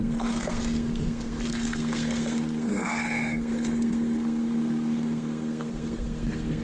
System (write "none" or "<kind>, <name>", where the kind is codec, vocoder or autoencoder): codec, SNAC